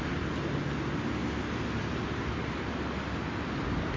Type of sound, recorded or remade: recorded